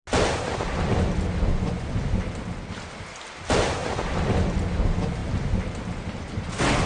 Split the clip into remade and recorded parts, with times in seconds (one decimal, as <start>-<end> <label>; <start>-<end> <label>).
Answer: 0.0-1.5 recorded; 1.5-2.0 remade; 2.0-6.9 recorded